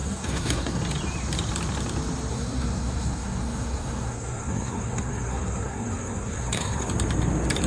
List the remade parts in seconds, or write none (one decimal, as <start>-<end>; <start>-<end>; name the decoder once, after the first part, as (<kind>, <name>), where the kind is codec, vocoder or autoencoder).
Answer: 0.0-0.8 (codec, SNAC); 2.3-6.9